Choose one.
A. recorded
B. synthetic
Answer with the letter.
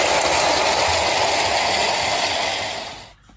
A